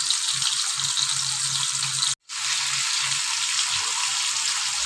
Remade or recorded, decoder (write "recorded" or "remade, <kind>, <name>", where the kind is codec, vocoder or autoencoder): recorded